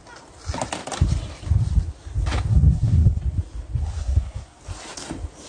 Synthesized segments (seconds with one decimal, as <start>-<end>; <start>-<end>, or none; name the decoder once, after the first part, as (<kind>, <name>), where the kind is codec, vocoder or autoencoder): 2.5-3.2 (codec, SNAC); 3.8-4.6